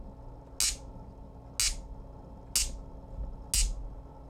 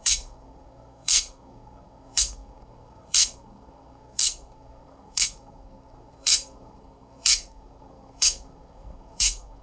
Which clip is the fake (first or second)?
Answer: second